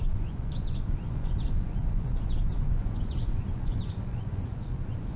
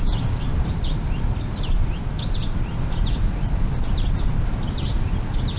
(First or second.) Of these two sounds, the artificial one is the first